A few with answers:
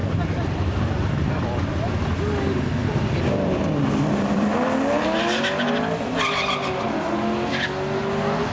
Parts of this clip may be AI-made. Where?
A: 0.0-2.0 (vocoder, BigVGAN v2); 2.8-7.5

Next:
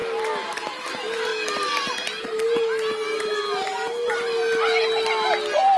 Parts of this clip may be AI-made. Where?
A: none

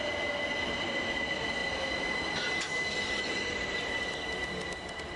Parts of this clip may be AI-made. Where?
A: none

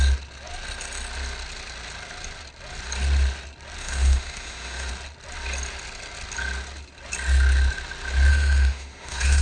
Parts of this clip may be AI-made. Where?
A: 3.8-4.9 (autoencoder, DAC-VAE); 8.3-9.4

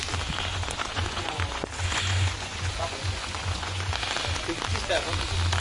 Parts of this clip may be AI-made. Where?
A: 0.5-3.9 (vocoder, Vocos)

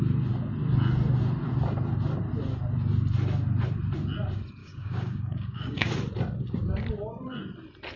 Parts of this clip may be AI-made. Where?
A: 4.6-5.9 (codec, DAC)

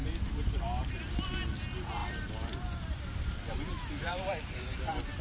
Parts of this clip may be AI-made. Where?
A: 0.0-1.3 (vocoder, BigVGAN v2); 2.0-5.2

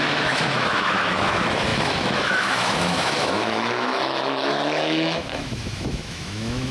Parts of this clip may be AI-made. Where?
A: 0.0-6.7 (autoencoder, DAC-VAE)